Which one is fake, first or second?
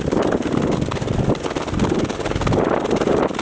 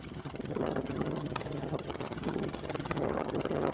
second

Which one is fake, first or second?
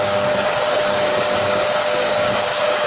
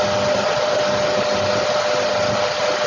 first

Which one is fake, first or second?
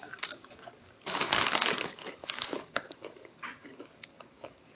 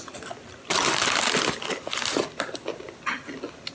first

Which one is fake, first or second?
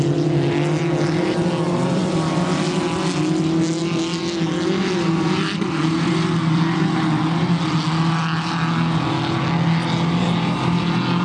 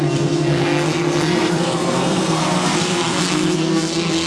second